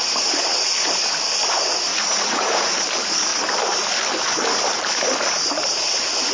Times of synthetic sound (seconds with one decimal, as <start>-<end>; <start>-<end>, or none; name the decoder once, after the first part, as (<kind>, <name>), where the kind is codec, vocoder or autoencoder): 1.9-2.8 (vocoder, Vocos)

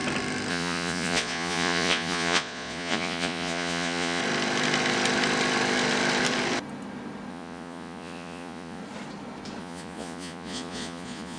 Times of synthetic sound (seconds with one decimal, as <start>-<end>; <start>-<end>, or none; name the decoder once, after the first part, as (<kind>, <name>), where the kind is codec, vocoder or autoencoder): 0.5-4.2 (vocoder, Vocos); 7.3-8.8; 9.6-11.4